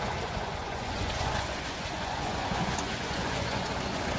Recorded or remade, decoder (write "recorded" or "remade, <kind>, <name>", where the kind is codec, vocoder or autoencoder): remade, vocoder, Vocos